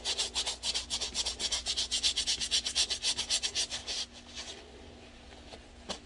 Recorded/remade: recorded